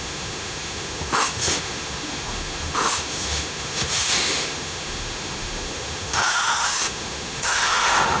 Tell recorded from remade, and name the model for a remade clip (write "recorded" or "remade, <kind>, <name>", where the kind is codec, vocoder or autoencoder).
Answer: remade, autoencoder, DAC-VAE